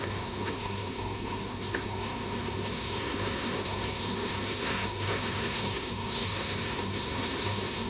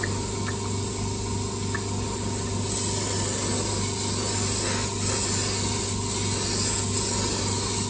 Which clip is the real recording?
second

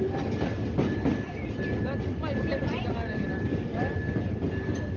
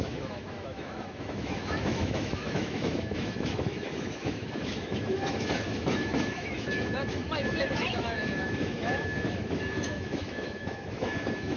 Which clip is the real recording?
first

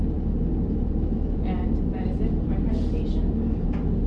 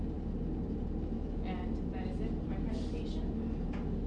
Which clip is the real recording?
second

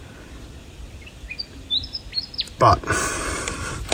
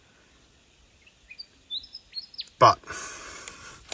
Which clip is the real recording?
second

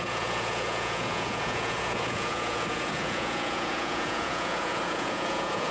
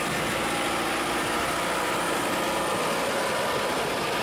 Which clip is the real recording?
second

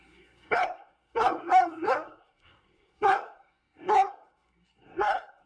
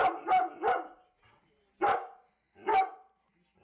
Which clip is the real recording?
second